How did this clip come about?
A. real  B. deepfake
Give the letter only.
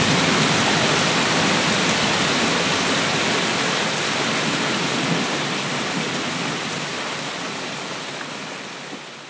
A